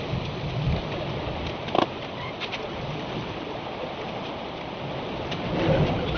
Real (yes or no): yes